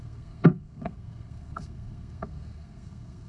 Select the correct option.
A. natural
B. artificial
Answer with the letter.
B